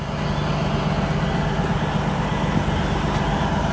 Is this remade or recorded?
recorded